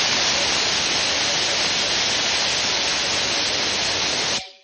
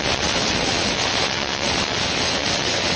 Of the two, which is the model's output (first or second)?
second